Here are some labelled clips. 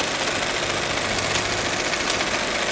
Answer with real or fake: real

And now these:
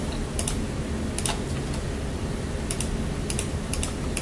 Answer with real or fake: real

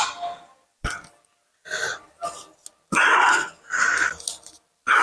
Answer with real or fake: real